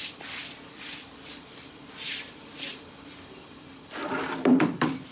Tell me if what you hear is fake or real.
fake